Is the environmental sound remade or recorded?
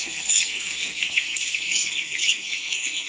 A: remade